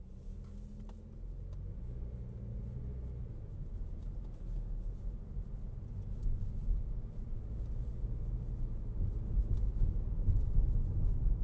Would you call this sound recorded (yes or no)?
yes